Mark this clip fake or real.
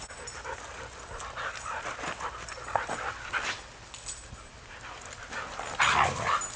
real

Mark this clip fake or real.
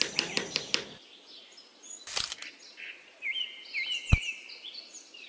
real